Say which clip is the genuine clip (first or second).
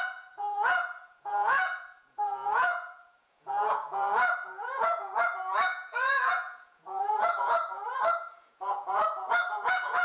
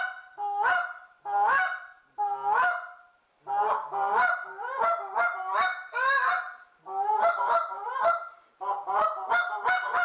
second